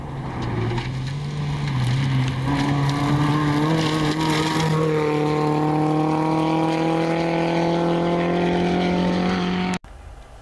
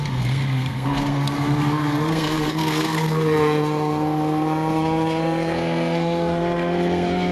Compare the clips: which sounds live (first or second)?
first